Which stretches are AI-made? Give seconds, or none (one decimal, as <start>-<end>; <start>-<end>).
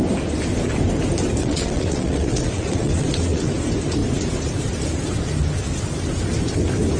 1.4-3.5